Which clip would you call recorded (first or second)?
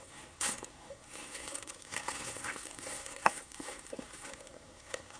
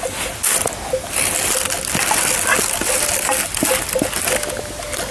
second